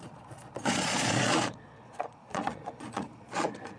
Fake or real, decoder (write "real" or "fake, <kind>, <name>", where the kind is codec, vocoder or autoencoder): fake, vocoder, Vocos